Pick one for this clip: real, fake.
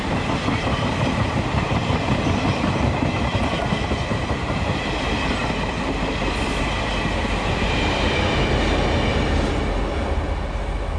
real